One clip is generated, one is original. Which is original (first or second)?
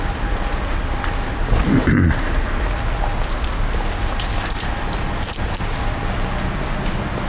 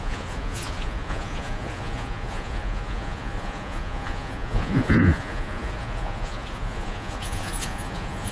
first